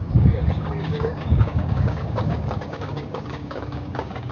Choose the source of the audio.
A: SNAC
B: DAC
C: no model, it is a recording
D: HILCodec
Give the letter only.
B